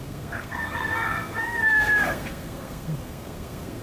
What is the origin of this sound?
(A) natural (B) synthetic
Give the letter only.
B